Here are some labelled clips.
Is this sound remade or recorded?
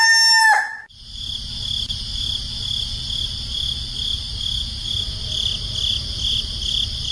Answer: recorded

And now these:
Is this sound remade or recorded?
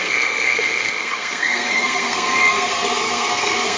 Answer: remade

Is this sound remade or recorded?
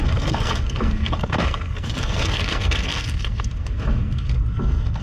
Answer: remade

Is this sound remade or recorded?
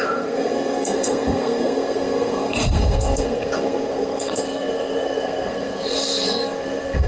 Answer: remade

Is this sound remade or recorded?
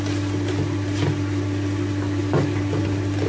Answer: recorded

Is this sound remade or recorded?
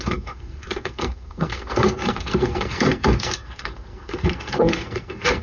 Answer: remade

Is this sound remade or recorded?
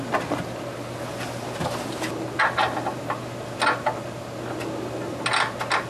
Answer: recorded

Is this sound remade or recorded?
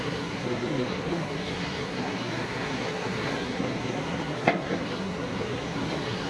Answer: remade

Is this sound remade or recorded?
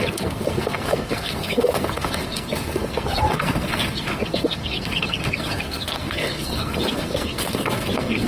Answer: remade